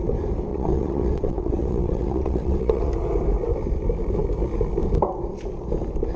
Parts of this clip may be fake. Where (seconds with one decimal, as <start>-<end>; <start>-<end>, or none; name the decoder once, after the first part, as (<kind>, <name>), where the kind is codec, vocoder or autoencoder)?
0.5-2.9 (vocoder, WaveNeXt)